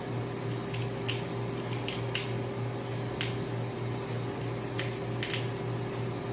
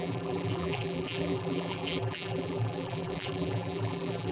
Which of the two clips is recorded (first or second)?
first